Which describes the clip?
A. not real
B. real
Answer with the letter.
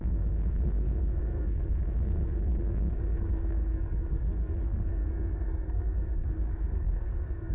A